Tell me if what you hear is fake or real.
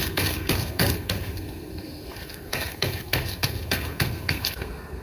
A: fake